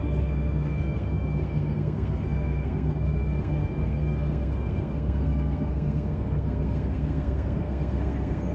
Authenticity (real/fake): fake